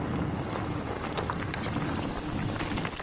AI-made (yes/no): no